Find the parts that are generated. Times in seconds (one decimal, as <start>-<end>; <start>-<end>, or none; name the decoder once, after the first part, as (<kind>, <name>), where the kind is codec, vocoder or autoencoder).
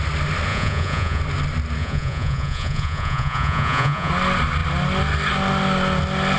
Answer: 0.5-1.2 (vocoder, Vocos); 1.8-4.1